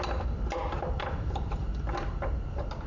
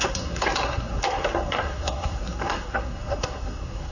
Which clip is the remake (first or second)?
second